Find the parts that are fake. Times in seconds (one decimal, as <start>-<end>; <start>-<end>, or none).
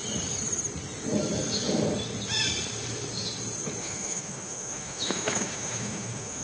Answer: 3.8-6.4